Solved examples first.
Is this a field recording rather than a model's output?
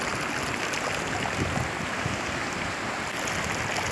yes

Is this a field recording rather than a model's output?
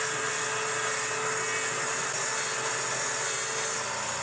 yes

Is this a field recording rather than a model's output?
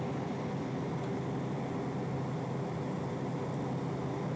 yes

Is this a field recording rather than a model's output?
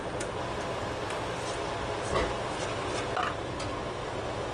yes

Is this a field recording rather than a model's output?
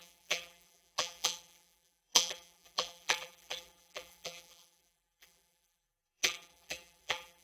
no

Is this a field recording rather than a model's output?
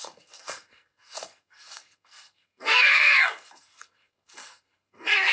no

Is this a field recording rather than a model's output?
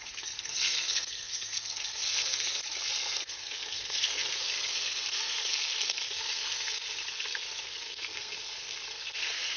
no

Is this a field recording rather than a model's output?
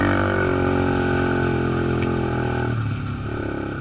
yes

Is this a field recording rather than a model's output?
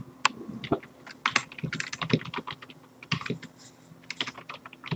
yes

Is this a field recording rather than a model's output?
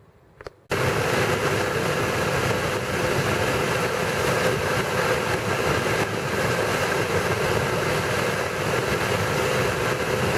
yes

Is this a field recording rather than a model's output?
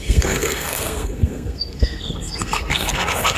no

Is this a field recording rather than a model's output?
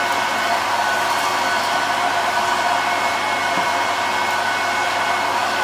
yes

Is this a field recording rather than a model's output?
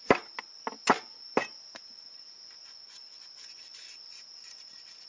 yes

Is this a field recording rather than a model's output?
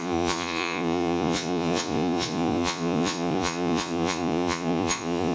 no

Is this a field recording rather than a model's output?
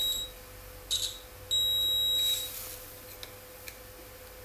yes